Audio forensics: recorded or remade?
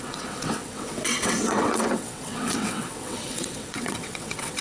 remade